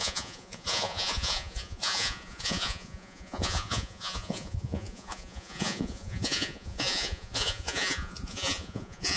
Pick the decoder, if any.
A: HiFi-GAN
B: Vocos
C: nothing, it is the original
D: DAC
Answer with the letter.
B